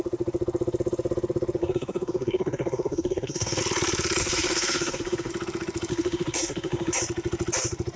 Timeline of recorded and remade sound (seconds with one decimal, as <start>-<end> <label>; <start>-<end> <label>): 0.0-1.6 recorded; 1.6-3.6 remade; 3.6-4.2 recorded; 4.2-5.3 remade; 5.3-5.9 recorded; 5.9-7.0 remade; 7.0-8.0 recorded